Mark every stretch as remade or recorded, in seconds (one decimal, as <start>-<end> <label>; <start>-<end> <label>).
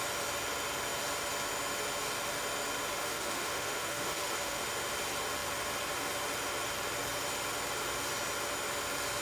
0.0-3.0 recorded; 3.0-4.6 remade; 4.6-9.2 recorded